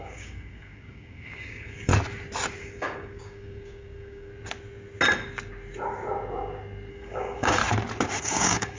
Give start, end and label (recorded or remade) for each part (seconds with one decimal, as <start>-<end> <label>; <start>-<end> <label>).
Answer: 0.0-1.9 remade; 1.9-2.6 recorded; 2.6-4.3 remade; 4.3-6.9 recorded; 6.9-7.6 remade; 7.6-8.2 recorded; 8.2-8.8 remade

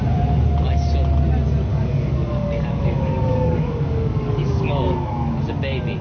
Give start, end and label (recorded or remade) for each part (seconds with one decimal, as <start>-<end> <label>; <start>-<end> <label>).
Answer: 0.0-1.7 recorded; 1.7-5.3 remade; 5.3-6.0 recorded

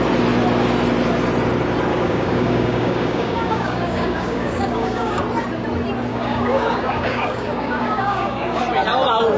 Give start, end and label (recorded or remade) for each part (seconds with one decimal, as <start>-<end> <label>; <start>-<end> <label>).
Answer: 0.0-1.9 recorded; 1.9-5.2 remade; 5.2-6.1 recorded; 6.1-8.6 remade; 8.6-9.4 recorded

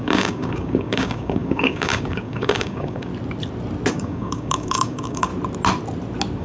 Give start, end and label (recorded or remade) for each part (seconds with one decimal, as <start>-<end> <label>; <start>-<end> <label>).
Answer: 0.0-3.1 remade; 3.1-3.9 recorded; 3.9-5.3 remade; 5.3-6.4 recorded

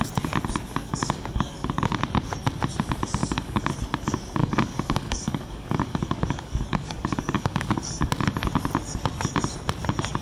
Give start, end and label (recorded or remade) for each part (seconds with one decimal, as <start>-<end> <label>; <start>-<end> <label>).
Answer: 0.0-0.8 recorded; 0.8-2.0 remade; 2.0-3.2 recorded; 3.2-3.7 remade; 3.7-4.4 recorded; 4.4-8.1 remade; 8.1-10.2 recorded

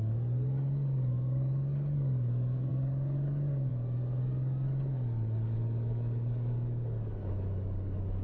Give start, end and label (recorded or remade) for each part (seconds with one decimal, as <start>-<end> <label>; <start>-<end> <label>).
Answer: 0.0-8.2 remade